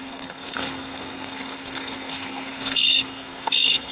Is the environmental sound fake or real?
fake